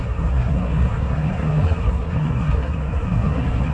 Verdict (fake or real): fake